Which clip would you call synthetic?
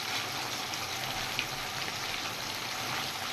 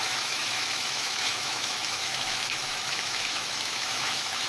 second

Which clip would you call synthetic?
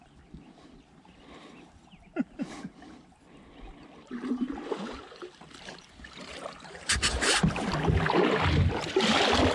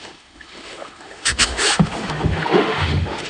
second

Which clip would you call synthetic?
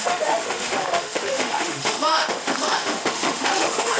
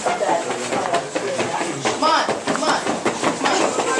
first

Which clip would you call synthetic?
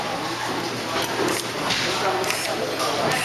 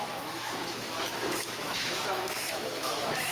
second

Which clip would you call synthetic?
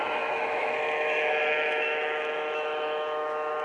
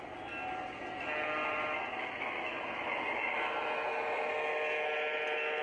first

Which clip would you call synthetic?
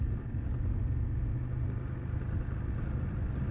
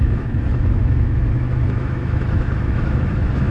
second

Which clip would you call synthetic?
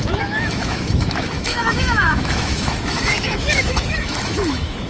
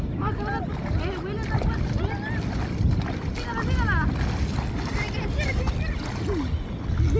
first